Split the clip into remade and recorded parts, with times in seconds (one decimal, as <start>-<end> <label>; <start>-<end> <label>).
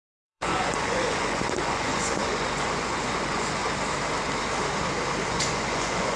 0.0-3.6 remade; 3.6-5.3 recorded; 5.3-6.2 remade